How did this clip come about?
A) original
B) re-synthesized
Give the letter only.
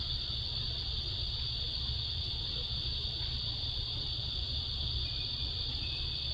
B